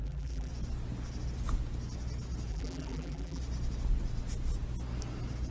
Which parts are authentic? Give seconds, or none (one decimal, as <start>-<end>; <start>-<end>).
0.5-2.5; 3.4-5.5